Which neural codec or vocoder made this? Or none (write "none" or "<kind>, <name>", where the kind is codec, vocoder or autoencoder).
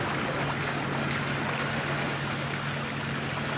none